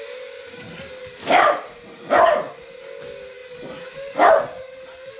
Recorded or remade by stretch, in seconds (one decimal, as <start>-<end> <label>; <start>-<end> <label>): 0.0-1.0 recorded; 1.0-2.0 remade; 2.0-5.2 recorded